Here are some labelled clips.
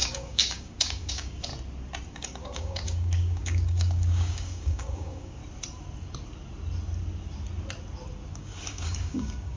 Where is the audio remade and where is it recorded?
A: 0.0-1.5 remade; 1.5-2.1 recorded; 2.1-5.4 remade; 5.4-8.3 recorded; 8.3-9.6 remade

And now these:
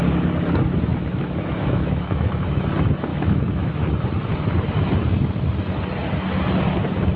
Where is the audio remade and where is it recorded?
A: 0.0-0.9 recorded; 0.9-2.6 remade; 2.6-3.1 recorded; 3.1-3.8 remade; 3.8-7.2 recorded